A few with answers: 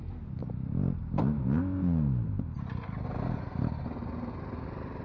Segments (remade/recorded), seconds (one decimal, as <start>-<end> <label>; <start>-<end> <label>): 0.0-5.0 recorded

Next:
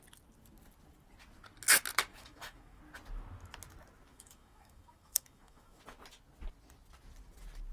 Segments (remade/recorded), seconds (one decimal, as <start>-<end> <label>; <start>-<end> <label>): 0.0-2.1 recorded; 2.1-2.8 remade; 2.8-4.1 recorded; 4.1-5.8 remade; 5.8-7.7 recorded

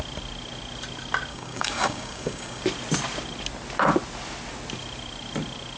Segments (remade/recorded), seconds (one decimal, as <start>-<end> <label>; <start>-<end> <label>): 0.0-1.3 recorded; 1.3-2.6 remade; 2.6-5.8 recorded

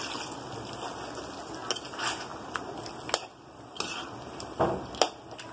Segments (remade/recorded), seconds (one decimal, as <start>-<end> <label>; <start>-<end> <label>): 0.0-5.5 recorded

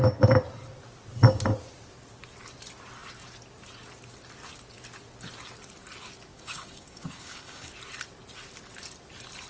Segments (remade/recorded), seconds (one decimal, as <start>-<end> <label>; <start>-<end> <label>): 0.0-6.3 recorded; 6.3-7.7 remade; 7.7-9.5 recorded

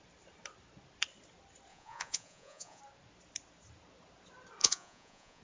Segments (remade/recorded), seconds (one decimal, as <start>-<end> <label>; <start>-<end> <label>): 0.0-1.7 recorded; 1.7-2.8 remade; 2.8-4.6 recorded; 4.6-5.4 remade